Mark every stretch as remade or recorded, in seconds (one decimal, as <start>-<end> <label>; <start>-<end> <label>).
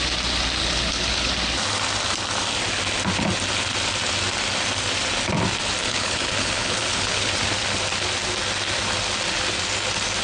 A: 0.0-0.6 recorded; 0.6-1.3 remade; 1.3-5.8 recorded; 5.8-7.3 remade; 7.3-10.2 recorded